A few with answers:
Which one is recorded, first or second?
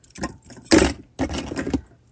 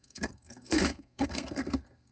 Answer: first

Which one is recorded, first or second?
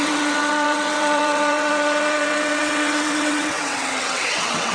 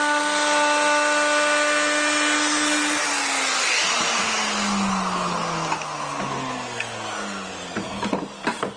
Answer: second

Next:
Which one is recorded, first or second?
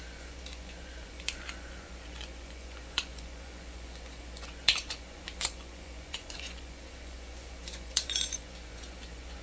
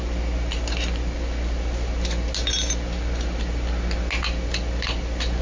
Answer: second